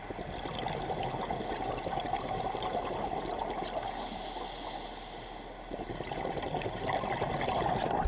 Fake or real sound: real